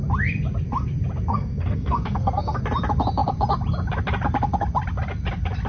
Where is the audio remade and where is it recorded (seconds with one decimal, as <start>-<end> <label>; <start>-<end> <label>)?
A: 0.0-1.3 recorded; 1.3-2.6 remade; 2.6-5.7 recorded